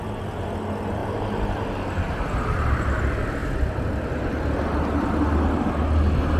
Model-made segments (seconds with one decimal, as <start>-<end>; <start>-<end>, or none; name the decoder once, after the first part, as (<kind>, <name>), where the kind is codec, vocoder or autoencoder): 1.0-3.0 (vocoder, BigVGAN v2)